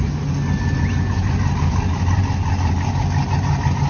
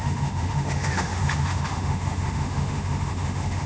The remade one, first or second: second